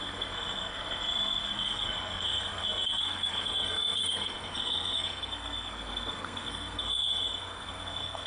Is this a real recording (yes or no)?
no